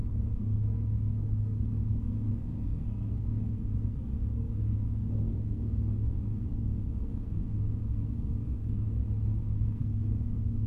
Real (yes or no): no